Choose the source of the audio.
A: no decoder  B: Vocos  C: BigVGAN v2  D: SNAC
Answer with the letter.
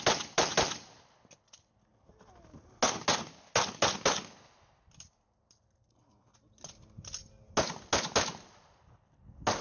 A